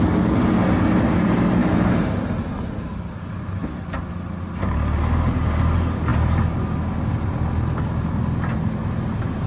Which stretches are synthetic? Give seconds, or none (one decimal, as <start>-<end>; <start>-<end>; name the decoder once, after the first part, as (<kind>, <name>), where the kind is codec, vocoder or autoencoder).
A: none